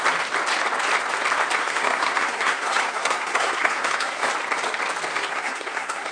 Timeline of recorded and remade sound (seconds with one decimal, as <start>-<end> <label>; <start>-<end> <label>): 0.0-1.6 recorded; 1.6-4.3 remade; 4.3-5.1 recorded; 5.1-6.1 remade